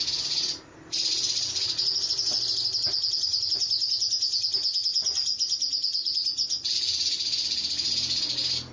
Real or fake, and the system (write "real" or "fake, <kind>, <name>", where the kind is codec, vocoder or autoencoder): real